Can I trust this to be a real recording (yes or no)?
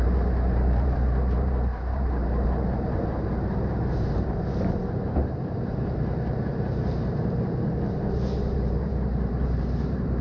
no